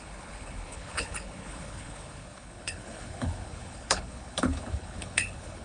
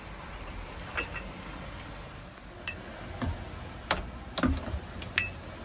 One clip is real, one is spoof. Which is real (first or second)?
second